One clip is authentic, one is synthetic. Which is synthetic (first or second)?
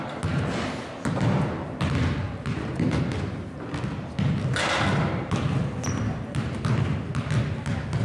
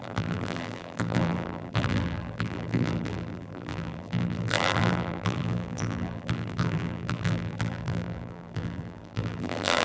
second